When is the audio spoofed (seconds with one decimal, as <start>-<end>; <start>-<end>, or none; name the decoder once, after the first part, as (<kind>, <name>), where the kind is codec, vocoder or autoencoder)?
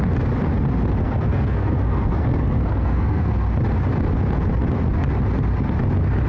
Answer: 1.0-3.3 (codec, SNAC)